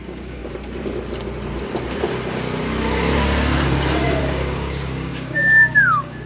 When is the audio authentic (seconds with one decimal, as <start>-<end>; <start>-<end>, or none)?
0.4-4.2